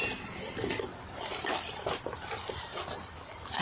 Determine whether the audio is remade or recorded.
remade